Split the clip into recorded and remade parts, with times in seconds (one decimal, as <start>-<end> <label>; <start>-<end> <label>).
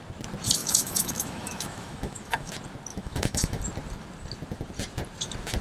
0.0-0.6 recorded; 0.6-2.5 remade; 2.5-2.9 recorded; 2.9-3.6 remade; 3.6-5.6 recorded